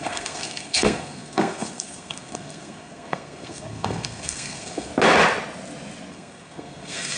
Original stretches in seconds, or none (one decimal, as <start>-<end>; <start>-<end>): 4.9-6.1